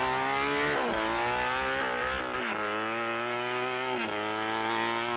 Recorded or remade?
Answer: recorded